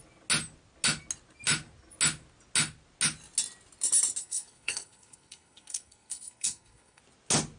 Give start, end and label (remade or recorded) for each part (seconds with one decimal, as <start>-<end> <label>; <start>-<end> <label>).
0.0-4.2 recorded; 4.2-7.0 remade; 7.0-7.6 recorded

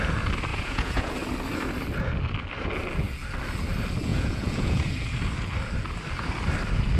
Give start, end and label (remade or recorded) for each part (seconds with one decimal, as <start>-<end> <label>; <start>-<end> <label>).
0.0-0.5 recorded; 0.5-1.1 remade; 1.1-4.1 recorded; 4.1-4.9 remade; 4.9-7.0 recorded

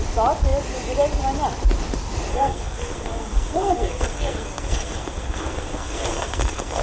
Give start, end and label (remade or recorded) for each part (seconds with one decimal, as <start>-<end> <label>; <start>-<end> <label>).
0.0-2.3 recorded; 2.3-6.8 remade